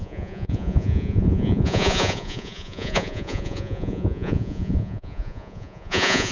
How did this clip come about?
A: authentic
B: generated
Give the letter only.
B